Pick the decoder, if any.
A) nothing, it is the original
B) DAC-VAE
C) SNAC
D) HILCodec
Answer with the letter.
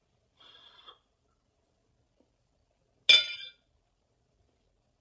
A